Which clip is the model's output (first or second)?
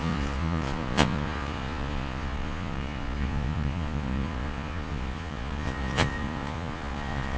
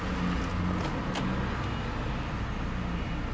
first